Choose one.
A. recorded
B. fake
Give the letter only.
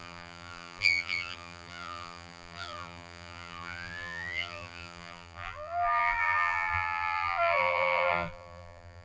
B